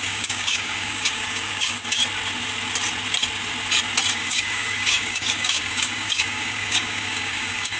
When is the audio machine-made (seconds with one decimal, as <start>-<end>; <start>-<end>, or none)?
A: 0.0-2.0; 4.1-7.8